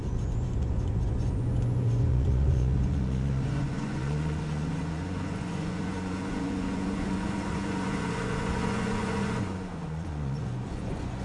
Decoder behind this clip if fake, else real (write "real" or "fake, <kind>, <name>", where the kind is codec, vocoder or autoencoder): fake, vocoder, Vocos